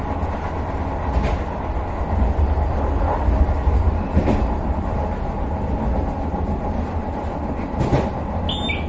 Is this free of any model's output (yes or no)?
yes